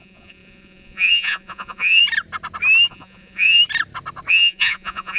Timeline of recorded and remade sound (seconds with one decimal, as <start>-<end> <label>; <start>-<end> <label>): 0.0-2.0 remade; 2.0-2.9 recorded; 2.9-3.6 remade; 3.6-4.3 recorded; 4.3-5.2 remade